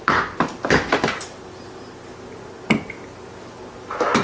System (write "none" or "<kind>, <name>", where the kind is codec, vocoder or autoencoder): none